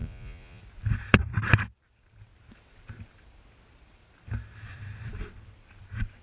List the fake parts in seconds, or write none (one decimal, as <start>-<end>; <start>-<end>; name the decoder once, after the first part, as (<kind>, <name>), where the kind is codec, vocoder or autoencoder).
0.0-0.6 (vocoder, Vocos)